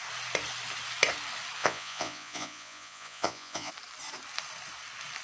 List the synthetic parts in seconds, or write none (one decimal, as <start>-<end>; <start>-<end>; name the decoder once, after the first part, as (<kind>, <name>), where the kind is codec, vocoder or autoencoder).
1.6-3.7 (vocoder, Vocos)